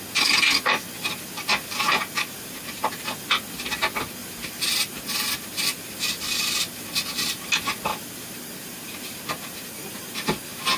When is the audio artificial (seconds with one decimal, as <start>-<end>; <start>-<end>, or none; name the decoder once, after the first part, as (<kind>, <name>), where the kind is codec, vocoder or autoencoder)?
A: 1.5-3.1 (vocoder, BigVGAN v2); 4.2-7.5; 7.9-10.8